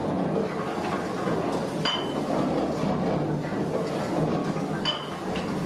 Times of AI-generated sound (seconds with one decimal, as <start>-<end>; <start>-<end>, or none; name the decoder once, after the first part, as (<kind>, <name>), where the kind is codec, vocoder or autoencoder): 4.4-5.1 (codec, DAC)